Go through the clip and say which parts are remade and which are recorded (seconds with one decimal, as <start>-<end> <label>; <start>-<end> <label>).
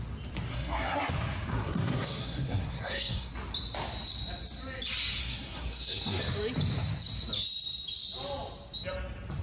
0.0-0.5 recorded; 0.5-1.1 remade; 1.1-1.5 recorded; 1.5-3.3 remade; 3.3-5.2 recorded; 5.2-6.2 remade; 6.2-9.4 recorded